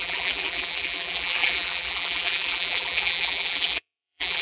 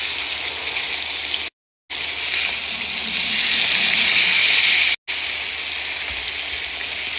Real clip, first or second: second